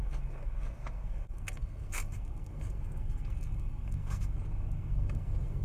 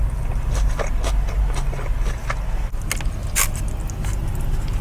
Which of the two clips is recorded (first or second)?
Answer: second